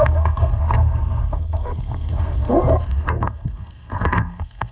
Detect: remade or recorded remade